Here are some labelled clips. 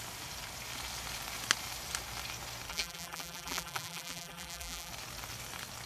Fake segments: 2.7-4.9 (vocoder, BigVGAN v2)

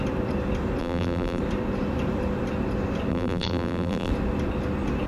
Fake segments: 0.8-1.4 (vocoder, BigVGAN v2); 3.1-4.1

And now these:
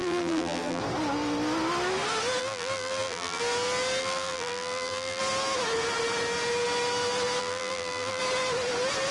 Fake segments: 0.0-0.8 (vocoder, BigVGAN v2); 2.4-3.4; 4.0-5.2; 7.4-8.2

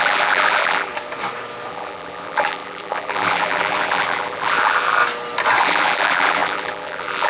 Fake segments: 0.0-0.9 (vocoder, BigVGAN v2); 1.7-5.0; 5.6-7.3

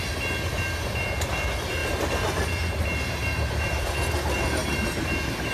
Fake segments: 0.0-1.8 (vocoder, BigVGAN v2); 3.6-5.5

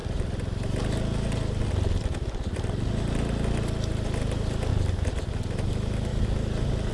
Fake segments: 4.7-5.3 (vocoder, BigVGAN v2)